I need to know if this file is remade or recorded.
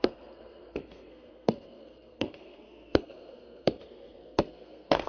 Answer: remade